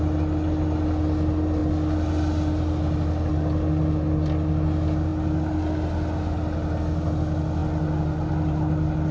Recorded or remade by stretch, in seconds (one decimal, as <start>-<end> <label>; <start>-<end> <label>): 0.0-9.1 recorded